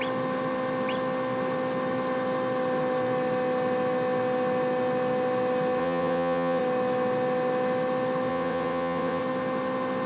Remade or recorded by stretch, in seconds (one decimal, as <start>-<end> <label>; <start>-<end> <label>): 0.0-5.8 recorded; 5.8-6.6 remade; 6.6-8.3 recorded; 8.3-9.2 remade; 9.2-10.1 recorded